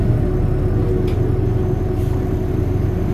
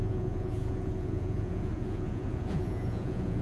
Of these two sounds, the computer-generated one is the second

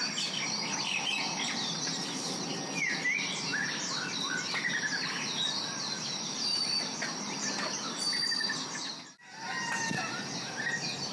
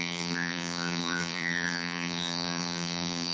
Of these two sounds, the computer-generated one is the second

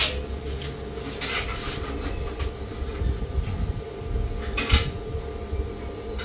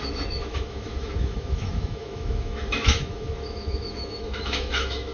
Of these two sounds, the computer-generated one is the second